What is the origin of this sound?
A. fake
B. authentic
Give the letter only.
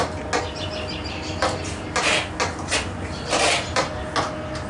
B